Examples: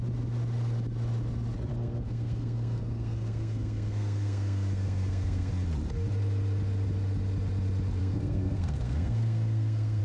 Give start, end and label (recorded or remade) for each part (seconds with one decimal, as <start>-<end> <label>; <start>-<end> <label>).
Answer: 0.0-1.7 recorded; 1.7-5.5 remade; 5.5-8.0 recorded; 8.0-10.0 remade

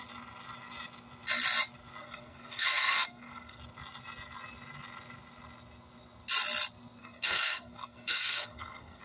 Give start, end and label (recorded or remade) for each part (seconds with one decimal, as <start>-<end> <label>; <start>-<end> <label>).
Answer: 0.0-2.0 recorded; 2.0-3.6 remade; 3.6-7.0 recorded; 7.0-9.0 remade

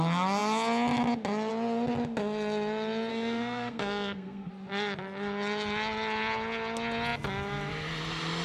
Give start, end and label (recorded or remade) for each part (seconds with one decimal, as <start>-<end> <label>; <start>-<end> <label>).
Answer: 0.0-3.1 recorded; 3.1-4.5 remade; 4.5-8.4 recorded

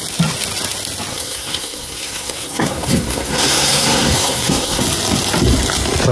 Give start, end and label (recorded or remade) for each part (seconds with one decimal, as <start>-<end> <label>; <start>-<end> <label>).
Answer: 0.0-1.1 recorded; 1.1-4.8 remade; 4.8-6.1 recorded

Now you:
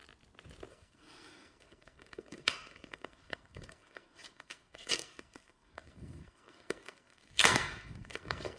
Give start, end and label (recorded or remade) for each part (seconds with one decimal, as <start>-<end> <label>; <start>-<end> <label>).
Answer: 0.0-0.7 recorded; 0.7-8.6 remade